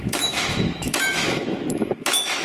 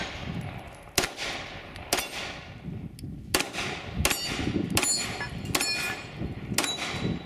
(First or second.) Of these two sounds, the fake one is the first